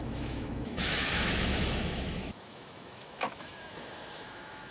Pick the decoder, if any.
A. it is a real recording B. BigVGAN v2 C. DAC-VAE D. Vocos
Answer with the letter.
C